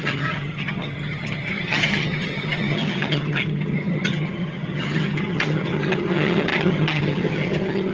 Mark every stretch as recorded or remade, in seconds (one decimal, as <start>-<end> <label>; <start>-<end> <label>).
0.0-7.9 remade